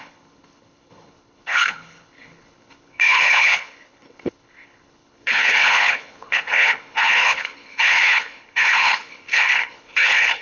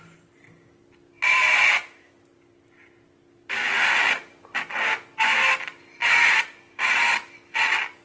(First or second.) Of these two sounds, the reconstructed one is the first